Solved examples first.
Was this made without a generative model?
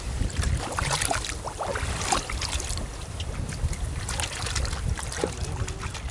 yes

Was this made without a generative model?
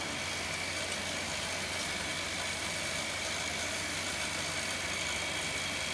yes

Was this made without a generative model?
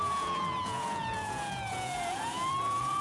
no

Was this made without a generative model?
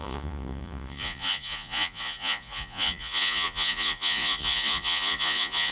no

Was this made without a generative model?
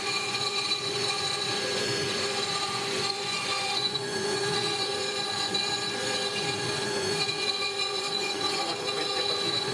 no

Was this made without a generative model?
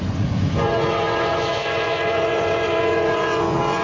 no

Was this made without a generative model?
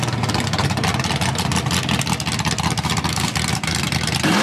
yes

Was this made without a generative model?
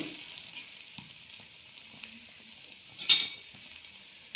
yes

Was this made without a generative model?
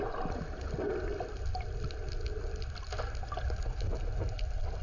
yes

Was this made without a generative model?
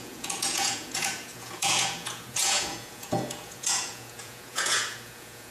no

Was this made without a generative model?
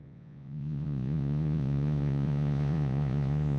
no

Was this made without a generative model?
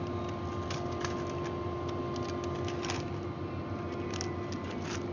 yes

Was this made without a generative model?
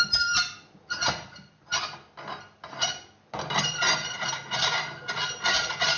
yes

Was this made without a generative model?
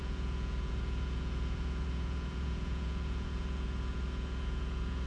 no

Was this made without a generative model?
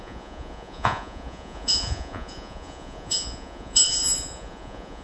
no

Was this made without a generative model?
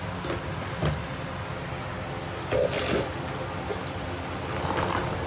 yes